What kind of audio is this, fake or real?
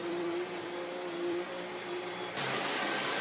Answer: fake